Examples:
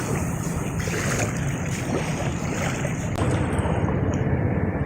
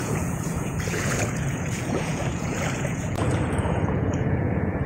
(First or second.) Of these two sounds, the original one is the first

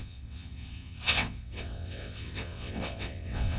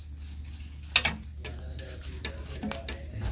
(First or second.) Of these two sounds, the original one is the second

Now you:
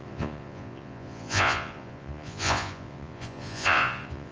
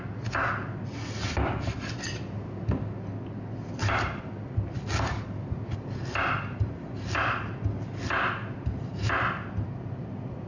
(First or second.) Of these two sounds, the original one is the second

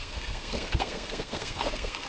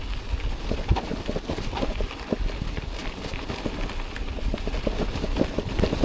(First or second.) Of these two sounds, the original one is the second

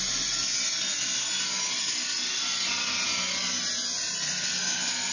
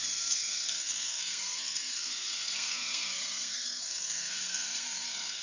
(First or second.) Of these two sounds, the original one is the first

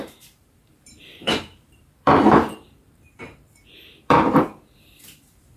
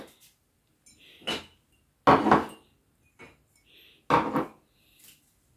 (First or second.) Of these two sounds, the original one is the second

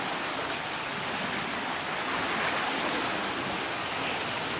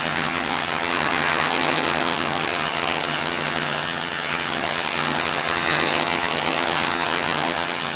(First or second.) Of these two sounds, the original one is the first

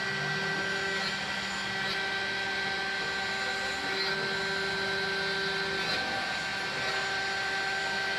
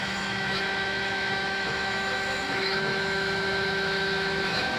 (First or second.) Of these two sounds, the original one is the first